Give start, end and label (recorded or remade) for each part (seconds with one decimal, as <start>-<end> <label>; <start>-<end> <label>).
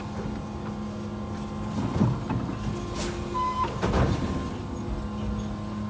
0.0-5.9 recorded